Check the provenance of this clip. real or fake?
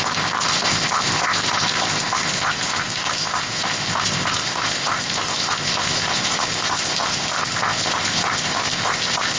fake